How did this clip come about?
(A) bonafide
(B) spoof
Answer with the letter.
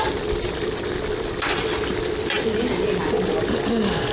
A